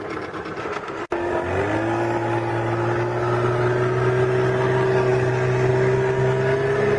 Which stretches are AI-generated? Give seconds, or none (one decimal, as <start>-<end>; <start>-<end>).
0.6-1.3